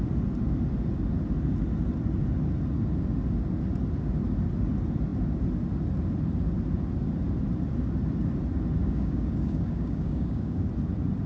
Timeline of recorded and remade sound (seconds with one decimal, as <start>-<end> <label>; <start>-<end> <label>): 0.0-8.8 recorded; 8.8-10.7 remade; 10.7-11.3 recorded